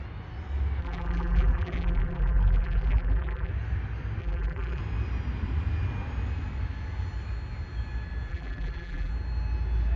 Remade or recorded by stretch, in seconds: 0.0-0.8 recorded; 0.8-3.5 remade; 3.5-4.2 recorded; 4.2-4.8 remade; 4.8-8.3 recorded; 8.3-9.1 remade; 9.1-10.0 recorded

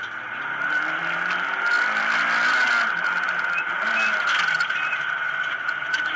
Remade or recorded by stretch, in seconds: 0.0-6.2 recorded

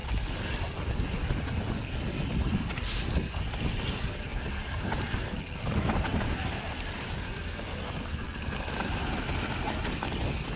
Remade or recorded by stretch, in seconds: 0.0-6.1 recorded; 6.1-9.4 remade; 9.4-10.6 recorded

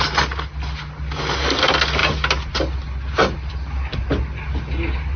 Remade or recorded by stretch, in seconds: 0.0-5.2 recorded

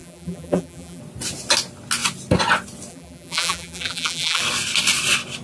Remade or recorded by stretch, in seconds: 0.0-1.0 remade; 1.0-2.9 recorded; 2.9-4.4 remade; 4.4-5.4 recorded

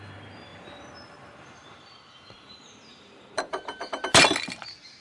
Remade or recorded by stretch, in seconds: 0.0-0.5 recorded; 0.5-3.5 remade; 3.5-5.0 recorded

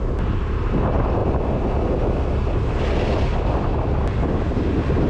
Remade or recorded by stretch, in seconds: 0.0-5.1 recorded

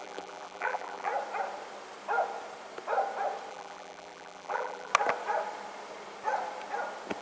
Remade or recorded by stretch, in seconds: 0.0-1.1 remade; 1.1-3.5 recorded; 3.5-4.9 remade; 4.9-7.2 recorded